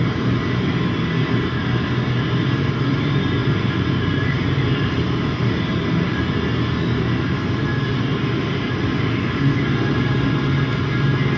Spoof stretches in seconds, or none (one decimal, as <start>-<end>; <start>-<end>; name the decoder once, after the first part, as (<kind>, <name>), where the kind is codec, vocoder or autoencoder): 3.4-6.3 (vocoder, BigVGAN v2)

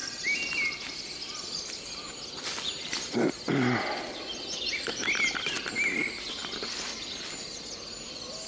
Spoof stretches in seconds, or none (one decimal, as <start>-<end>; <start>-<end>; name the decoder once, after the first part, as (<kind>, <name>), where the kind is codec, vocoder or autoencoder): none

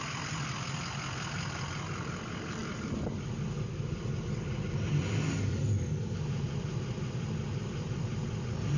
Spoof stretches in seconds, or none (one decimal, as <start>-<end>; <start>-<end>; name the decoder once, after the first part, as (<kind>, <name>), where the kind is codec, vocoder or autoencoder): none

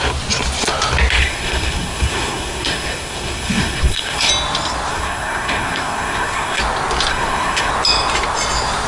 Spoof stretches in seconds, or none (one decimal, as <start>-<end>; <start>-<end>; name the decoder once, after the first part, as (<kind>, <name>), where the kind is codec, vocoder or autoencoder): 1.2-4.3 (codec, SNAC); 4.9-6.6; 7.1-7.7

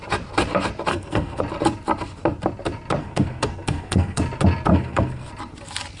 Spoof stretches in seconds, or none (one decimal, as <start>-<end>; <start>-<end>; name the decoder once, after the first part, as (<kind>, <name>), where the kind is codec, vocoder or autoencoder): 0.9-1.4 (codec, SNAC); 3.0-4.2; 4.7-5.3

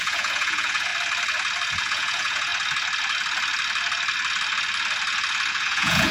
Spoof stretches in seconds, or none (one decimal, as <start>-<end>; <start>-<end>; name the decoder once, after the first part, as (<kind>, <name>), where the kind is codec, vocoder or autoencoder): 0.0-0.9 (vocoder, Vocos); 1.8-2.5; 5.5-6.1